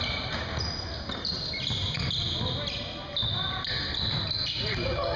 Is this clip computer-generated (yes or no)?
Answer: no